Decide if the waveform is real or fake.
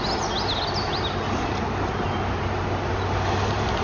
real